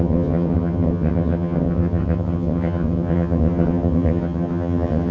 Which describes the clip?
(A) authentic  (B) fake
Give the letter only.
B